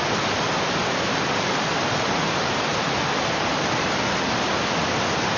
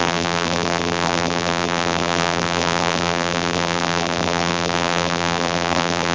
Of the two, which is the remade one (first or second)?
second